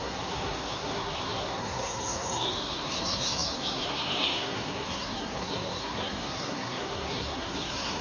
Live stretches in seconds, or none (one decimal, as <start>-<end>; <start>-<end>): none